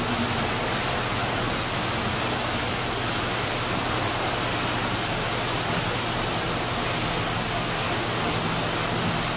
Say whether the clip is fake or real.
real